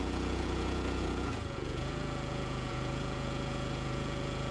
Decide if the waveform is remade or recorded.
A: remade